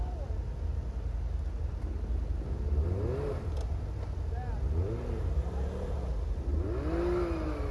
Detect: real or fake real